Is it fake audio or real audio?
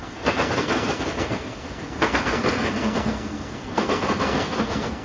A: fake